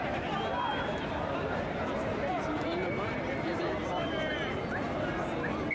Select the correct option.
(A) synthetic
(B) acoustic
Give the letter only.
A